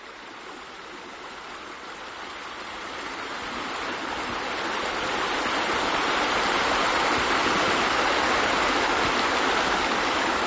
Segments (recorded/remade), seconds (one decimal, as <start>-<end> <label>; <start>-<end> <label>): 0.0-10.5 recorded